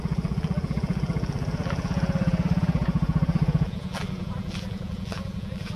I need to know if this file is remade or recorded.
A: remade